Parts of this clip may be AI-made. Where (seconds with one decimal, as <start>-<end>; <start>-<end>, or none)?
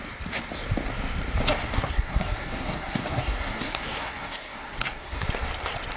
1.6-5.2